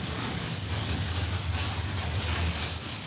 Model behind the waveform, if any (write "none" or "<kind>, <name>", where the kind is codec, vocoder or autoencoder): codec, DAC